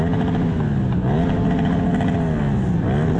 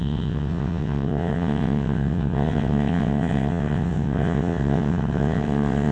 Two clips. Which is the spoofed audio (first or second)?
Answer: second